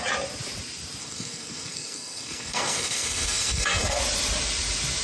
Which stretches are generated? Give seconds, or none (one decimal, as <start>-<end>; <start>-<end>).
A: 1.0-4.0